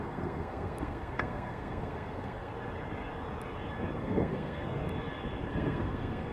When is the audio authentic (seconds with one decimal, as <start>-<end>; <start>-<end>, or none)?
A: 2.5-4.0; 4.8-5.5